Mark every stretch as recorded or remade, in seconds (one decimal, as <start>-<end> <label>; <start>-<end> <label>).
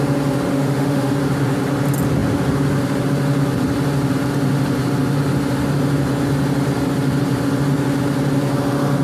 0.0-0.5 recorded; 0.5-1.1 remade; 1.1-9.0 recorded